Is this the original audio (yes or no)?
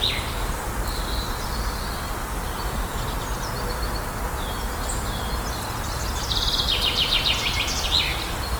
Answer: yes